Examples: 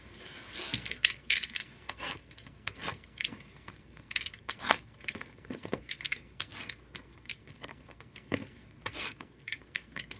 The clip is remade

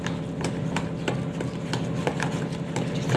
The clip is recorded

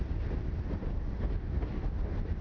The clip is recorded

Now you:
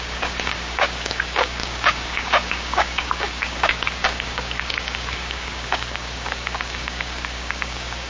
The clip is remade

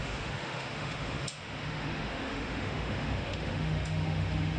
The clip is remade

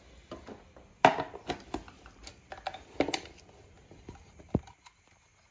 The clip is recorded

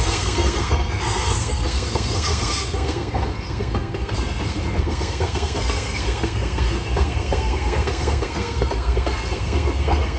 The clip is remade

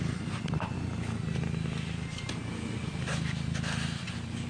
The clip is recorded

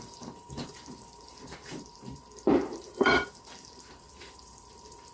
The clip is remade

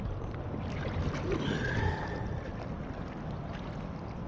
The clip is recorded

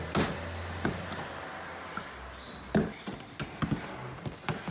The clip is recorded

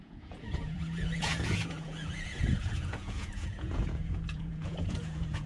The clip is remade